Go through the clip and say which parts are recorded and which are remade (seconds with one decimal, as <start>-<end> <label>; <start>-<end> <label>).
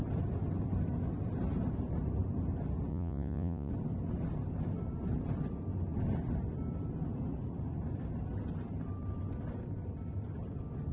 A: 0.0-2.9 recorded; 2.9-3.7 remade; 3.7-10.9 recorded